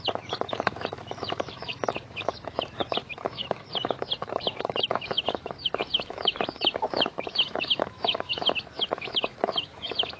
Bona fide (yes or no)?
no